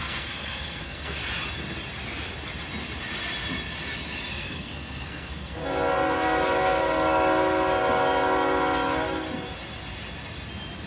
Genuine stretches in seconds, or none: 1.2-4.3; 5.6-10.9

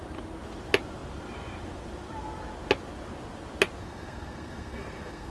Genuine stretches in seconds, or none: 0.0-3.8

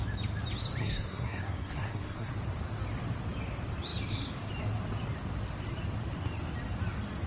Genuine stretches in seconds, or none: 0.0-0.8; 2.3-7.3

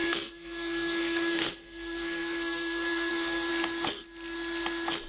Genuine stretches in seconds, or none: 3.5-5.1